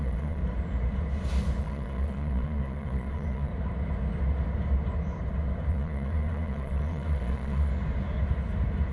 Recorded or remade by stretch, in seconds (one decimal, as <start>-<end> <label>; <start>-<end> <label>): 0.0-0.4 remade; 0.4-1.6 recorded; 1.6-3.5 remade; 3.5-5.7 recorded; 5.7-7.7 remade; 7.7-8.9 recorded